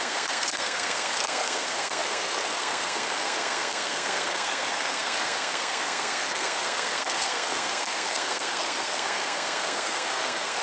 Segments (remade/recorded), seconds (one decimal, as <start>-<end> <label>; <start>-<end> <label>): 0.0-10.6 remade